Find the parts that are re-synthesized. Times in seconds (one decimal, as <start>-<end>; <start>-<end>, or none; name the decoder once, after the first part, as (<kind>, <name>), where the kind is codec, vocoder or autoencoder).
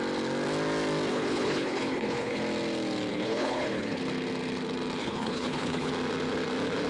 1.1-2.4 (codec, HILCodec); 3.1-4.0; 5.0-5.9